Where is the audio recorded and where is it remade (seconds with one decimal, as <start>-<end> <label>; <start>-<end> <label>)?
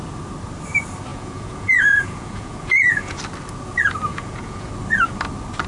0.0-1.1 recorded; 1.1-3.2 remade; 3.2-4.1 recorded; 4.1-4.7 remade; 4.7-5.7 recorded